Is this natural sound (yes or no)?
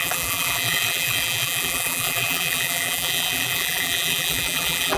no